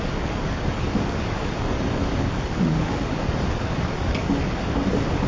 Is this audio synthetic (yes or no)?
yes